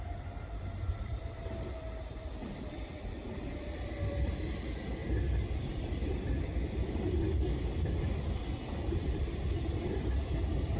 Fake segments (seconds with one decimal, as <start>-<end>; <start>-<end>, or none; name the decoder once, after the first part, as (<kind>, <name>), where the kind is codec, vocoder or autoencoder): 0.0-10.8 (vocoder, BigVGAN v2)